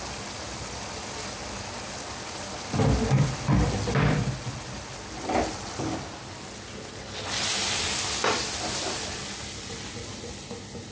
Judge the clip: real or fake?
real